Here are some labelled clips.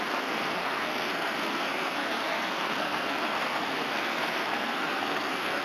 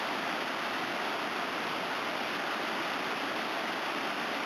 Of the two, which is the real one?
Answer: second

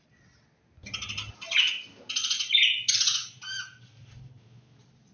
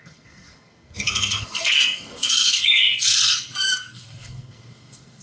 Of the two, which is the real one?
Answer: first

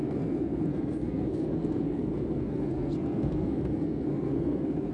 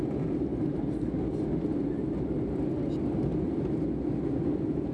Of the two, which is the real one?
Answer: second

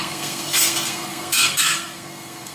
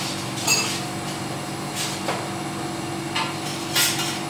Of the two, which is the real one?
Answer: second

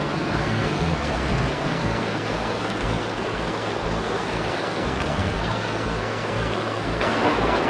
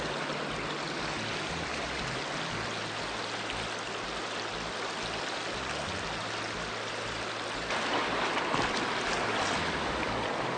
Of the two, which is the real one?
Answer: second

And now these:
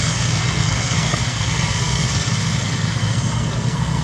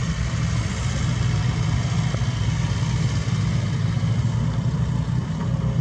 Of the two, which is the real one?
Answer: second